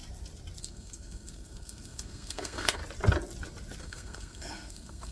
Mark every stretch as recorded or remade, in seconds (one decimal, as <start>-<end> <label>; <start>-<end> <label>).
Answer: 0.0-0.6 recorded; 0.6-2.8 remade; 2.8-3.8 recorded; 3.8-5.1 remade

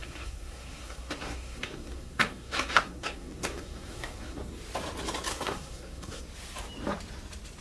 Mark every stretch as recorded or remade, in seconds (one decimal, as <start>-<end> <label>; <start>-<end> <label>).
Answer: 0.0-4.5 remade; 4.5-5.3 recorded; 5.3-6.2 remade; 6.2-7.6 recorded